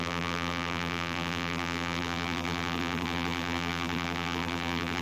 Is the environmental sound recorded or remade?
remade